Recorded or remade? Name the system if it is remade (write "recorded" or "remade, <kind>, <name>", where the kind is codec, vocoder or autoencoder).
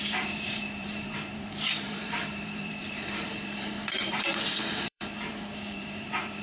remade, vocoder, BigVGAN v2